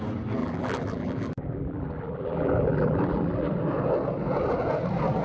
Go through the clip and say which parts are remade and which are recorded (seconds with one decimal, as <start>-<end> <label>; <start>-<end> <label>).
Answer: 0.0-0.4 recorded; 0.4-3.5 remade; 3.5-5.2 recorded